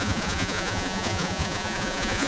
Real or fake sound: fake